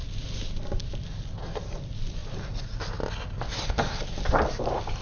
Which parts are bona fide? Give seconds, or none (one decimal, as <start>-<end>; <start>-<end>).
0.0-5.0